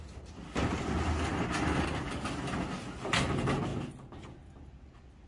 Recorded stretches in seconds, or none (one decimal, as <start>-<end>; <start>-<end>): 0.0-5.3